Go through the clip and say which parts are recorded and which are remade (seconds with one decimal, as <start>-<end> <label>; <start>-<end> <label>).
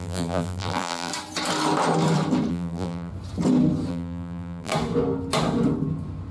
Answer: 0.0-1.1 remade; 1.1-2.5 recorded; 2.5-3.1 remade; 3.1-3.9 recorded; 3.9-4.7 remade; 4.7-6.3 recorded